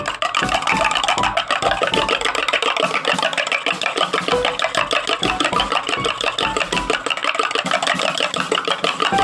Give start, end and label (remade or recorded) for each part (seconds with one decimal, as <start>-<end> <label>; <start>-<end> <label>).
0.0-9.2 recorded